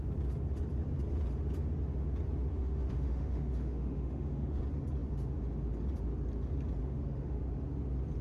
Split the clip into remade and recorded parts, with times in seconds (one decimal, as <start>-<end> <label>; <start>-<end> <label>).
0.0-2.5 recorded; 2.5-4.6 remade; 4.6-6.8 recorded; 6.8-7.4 remade; 7.4-8.2 recorded